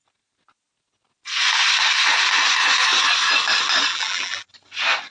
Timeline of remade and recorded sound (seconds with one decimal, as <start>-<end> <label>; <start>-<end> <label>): 0.0-3.9 recorded; 3.9-4.5 remade; 4.5-5.1 recorded